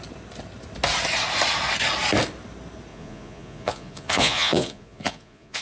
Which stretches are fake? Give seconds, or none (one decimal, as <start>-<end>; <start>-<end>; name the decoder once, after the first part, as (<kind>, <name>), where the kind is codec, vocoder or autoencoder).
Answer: 2.9-5.6 (vocoder, Vocos)